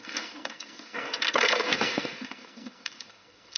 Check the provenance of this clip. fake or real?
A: fake